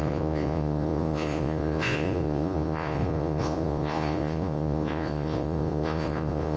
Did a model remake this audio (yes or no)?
yes